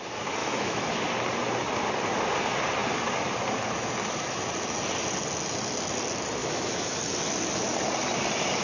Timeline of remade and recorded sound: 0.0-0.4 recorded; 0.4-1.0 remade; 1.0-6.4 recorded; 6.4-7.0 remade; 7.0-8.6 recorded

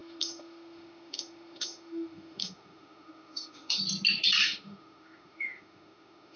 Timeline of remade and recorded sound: 0.0-3.8 remade; 3.8-4.4 recorded; 4.4-6.4 remade

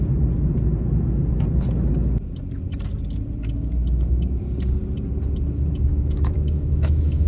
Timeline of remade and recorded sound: 0.0-5.9 recorded; 5.9-7.3 remade

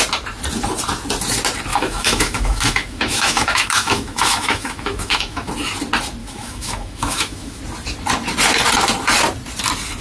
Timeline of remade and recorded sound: 0.0-1.7 recorded; 1.7-5.5 remade; 5.5-6.2 recorded; 6.2-7.6 remade; 7.6-10.0 recorded

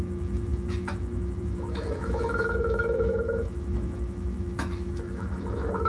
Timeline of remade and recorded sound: 0.0-5.9 remade

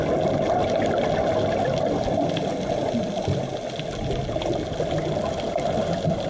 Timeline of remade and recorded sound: 0.0-6.3 recorded